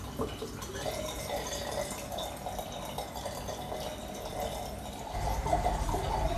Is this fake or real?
real